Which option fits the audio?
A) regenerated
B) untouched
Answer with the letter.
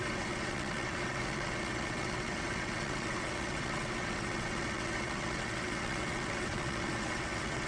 A